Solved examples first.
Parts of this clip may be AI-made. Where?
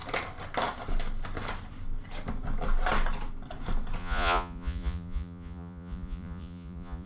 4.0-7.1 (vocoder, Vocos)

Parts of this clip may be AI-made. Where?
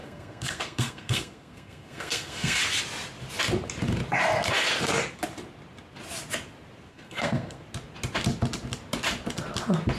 0.0-2.6 (codec, SNAC); 6.9-7.6